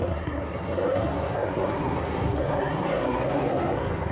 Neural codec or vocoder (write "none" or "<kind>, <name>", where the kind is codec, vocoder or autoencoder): codec, SNAC